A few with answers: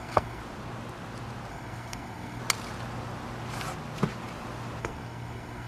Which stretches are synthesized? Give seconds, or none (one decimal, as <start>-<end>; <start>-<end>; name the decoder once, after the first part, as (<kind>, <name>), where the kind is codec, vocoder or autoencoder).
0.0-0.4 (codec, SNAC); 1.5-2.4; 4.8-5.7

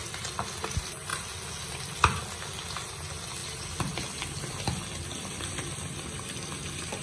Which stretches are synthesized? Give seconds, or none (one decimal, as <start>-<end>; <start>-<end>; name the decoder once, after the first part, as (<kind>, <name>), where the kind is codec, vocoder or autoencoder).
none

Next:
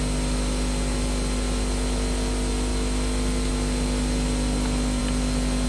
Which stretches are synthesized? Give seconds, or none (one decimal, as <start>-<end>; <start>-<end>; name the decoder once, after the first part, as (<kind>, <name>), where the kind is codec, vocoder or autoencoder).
none

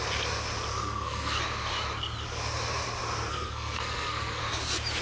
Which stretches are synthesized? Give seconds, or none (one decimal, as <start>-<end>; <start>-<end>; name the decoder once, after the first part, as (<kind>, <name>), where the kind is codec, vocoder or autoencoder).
0.7-1.4 (codec, SNAC); 3.3-4.4

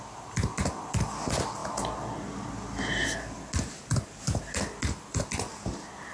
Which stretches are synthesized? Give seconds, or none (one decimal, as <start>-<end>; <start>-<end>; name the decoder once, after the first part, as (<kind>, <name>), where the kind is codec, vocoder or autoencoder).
none

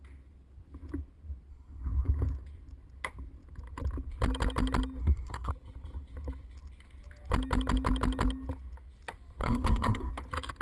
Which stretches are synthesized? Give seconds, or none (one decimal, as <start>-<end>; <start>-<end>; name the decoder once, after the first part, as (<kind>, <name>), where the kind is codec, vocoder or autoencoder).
1.5-2.1 (codec, SNAC); 5.0-5.5; 9.4-10.1

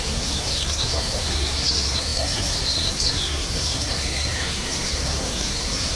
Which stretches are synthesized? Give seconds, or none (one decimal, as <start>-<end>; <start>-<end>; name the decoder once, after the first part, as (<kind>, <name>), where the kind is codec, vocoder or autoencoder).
0.0-6.0 (codec, SNAC)

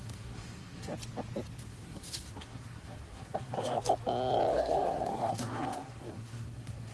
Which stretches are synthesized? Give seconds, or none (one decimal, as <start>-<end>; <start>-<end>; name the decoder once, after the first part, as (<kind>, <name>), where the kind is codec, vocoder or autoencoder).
0.0-0.9 (codec, SNAC); 1.7-3.8; 4.5-6.9